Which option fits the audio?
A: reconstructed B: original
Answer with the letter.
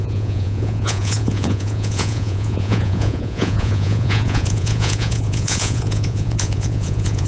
A